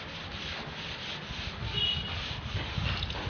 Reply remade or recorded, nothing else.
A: recorded